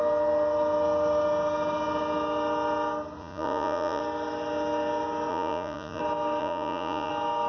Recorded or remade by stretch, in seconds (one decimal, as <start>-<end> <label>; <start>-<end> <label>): 0.0-3.2 recorded; 3.2-4.0 remade; 4.0-5.3 recorded; 5.3-6.0 remade; 6.0-6.4 recorded; 6.4-7.1 remade; 7.1-7.5 recorded